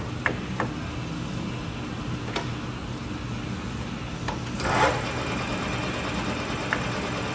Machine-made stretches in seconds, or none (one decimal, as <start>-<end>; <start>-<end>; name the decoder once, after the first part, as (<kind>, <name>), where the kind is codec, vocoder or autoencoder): none